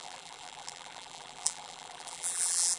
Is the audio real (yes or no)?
no